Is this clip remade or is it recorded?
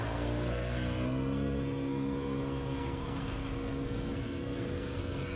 remade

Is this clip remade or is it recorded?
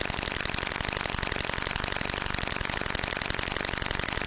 recorded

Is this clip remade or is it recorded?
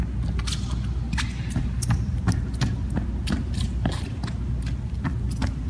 recorded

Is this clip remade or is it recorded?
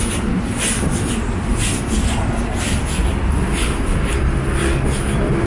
recorded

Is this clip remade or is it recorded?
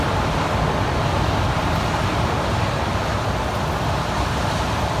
recorded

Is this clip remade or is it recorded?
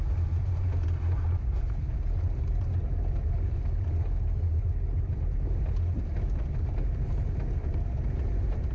recorded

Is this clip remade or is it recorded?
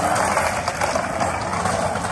recorded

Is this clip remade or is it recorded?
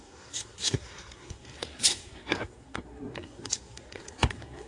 remade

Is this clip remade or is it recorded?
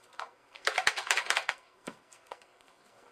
remade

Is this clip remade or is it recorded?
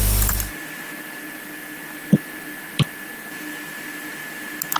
recorded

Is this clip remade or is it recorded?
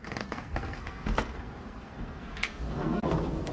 remade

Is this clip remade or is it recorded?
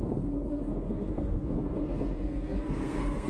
remade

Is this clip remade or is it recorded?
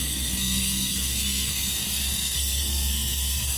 remade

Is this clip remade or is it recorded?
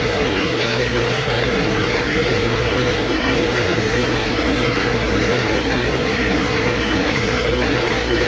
remade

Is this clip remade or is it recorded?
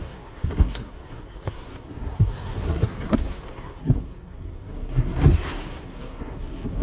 remade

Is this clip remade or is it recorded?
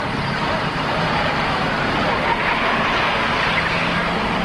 recorded